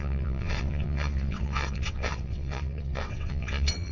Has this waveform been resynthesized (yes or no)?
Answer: yes